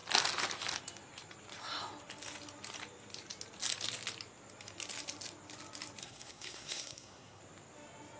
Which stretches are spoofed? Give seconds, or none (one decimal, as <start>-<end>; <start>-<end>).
6.0-7.4